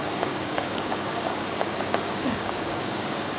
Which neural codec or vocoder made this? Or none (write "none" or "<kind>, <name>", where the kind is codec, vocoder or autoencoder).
codec, DAC